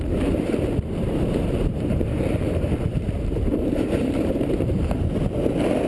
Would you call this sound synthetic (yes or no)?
yes